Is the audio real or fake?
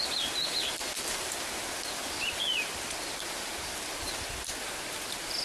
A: real